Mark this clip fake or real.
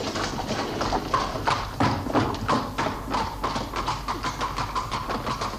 real